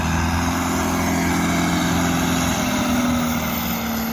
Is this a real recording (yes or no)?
yes